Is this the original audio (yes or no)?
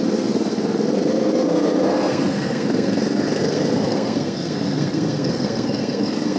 no